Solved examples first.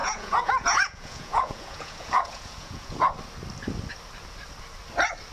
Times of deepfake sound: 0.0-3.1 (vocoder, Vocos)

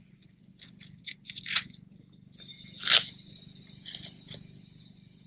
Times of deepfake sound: 0.0-0.5 (vocoder, Vocos); 1.0-1.9

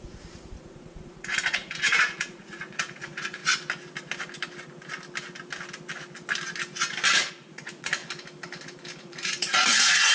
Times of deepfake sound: 0.0-3.4 (vocoder, Vocos); 7.3-8.0; 9.0-10.1